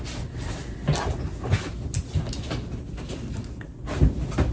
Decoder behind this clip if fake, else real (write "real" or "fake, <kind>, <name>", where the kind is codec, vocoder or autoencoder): real